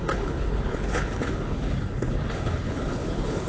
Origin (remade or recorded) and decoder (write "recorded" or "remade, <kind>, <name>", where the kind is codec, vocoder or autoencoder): remade, codec, HILCodec